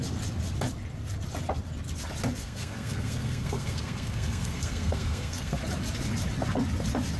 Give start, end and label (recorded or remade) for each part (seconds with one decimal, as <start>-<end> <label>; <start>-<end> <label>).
0.0-2.4 recorded; 2.4-5.6 remade; 5.6-7.2 recorded